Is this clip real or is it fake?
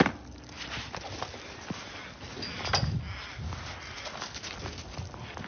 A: real